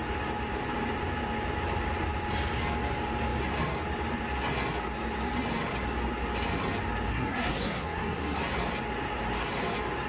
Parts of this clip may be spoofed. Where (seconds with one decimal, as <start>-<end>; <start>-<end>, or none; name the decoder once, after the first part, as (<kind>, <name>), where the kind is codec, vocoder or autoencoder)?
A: 7.1-8.4 (codec, SNAC)